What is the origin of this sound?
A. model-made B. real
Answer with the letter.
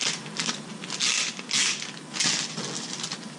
B